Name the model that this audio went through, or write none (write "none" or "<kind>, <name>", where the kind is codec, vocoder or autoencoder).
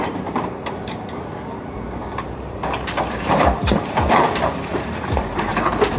vocoder, BigVGAN v2